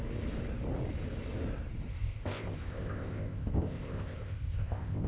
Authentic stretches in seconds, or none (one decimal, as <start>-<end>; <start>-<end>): 0.0-1.9